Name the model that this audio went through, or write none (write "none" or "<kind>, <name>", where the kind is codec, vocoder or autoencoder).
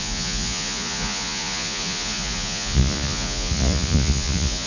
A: vocoder, Vocos